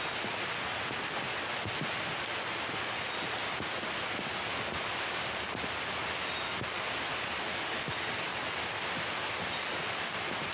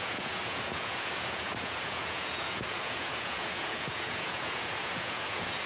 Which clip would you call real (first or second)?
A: first